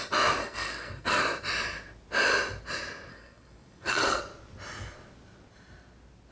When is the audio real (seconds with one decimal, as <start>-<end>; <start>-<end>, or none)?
0.0-0.4; 1.2-3.1; 4.2-6.3